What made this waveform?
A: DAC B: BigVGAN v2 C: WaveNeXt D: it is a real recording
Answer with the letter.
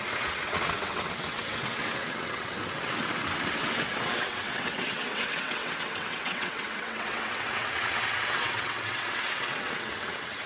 C